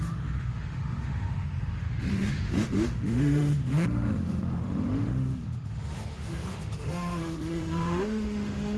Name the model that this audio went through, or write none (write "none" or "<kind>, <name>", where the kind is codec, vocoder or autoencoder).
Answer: autoencoder, DAC-VAE